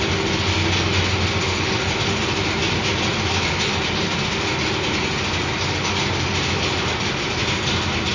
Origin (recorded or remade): recorded